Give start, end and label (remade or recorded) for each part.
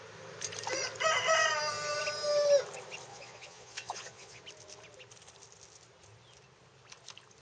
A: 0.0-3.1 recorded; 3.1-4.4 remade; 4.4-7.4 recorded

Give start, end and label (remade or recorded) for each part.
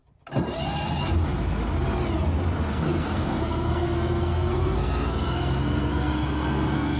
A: 0.0-2.7 recorded; 2.7-7.0 remade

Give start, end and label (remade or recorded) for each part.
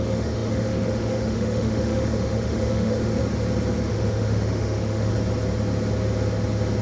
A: 0.0-3.2 remade; 3.2-3.9 recorded; 3.9-5.1 remade; 5.1-6.8 recorded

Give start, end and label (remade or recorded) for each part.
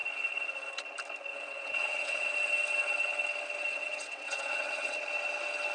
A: 0.0-1.3 recorded; 1.3-2.3 remade; 2.3-3.7 recorded; 3.7-5.0 remade; 5.0-5.7 recorded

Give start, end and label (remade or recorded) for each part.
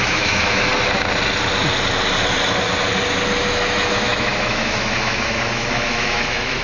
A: 0.0-0.7 remade; 0.7-3.4 recorded; 3.4-6.6 remade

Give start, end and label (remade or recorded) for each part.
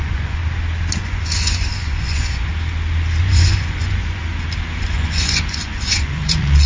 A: 0.0-0.4 remade; 0.4-1.0 recorded; 1.0-2.5 remade; 2.5-3.2 recorded; 3.2-4.2 remade; 4.2-4.8 recorded; 4.8-6.7 remade